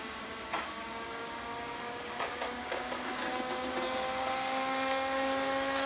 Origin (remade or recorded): remade